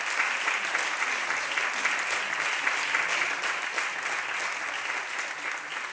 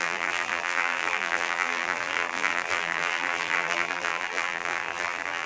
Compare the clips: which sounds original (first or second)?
first